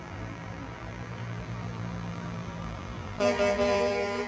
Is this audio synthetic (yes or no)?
yes